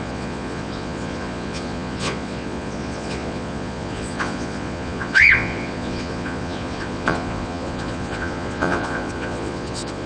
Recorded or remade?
remade